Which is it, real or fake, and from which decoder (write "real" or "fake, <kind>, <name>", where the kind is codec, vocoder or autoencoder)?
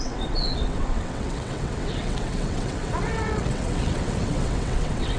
fake, vocoder, WaveNeXt